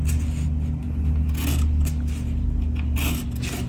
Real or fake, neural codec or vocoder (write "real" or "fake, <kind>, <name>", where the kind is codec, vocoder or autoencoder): real